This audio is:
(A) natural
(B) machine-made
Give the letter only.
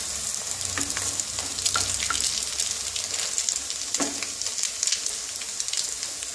A